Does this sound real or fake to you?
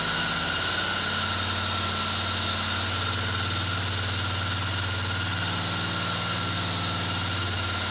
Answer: real